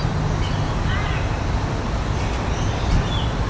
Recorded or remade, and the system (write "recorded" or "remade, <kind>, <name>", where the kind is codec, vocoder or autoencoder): recorded